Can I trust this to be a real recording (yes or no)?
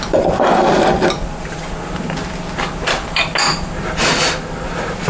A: no